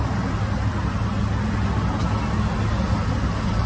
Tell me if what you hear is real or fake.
real